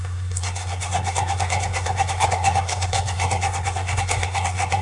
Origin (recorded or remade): remade